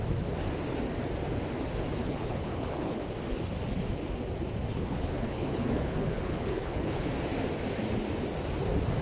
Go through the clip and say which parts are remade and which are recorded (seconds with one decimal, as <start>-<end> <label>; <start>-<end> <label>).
0.0-2.0 recorded; 2.0-3.0 remade; 3.0-4.7 recorded; 4.7-7.1 remade; 7.1-9.0 recorded